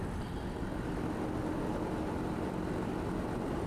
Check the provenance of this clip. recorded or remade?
recorded